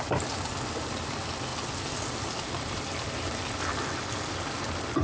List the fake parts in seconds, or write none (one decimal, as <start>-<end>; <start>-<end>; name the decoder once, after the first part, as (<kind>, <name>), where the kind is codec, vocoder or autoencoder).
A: none